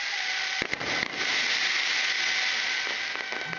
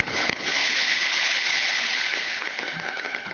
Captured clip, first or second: first